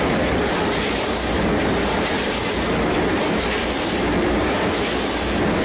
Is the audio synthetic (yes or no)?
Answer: no